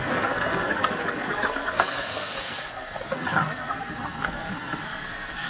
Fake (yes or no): yes